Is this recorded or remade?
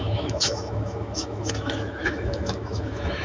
remade